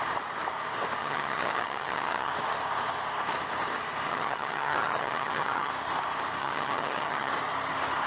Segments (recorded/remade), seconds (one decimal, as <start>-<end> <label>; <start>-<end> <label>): 0.0-1.0 recorded; 1.0-2.3 remade; 2.3-4.1 recorded; 4.1-5.7 remade; 5.7-6.4 recorded; 6.4-7.3 remade; 7.3-8.1 recorded